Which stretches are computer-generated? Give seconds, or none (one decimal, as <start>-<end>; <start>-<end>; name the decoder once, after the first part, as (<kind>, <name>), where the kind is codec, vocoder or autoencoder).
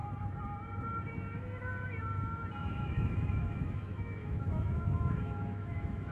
2.6-6.1 (autoencoder, DAC-VAE)